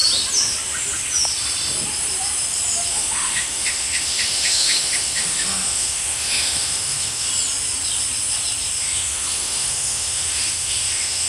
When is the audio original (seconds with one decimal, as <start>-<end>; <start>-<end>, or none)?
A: 0.0-2.9; 7.3-8.8